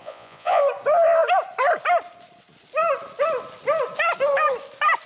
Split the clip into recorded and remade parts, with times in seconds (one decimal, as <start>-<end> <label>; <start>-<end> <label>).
0.0-0.6 remade; 0.6-5.1 recorded